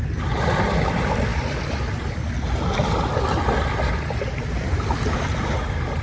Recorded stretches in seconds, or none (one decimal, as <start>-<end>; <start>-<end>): 0.0-6.0